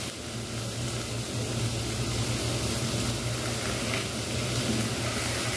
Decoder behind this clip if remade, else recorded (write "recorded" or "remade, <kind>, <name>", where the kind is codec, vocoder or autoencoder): recorded